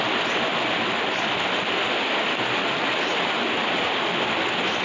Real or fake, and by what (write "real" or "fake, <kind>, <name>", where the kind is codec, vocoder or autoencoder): real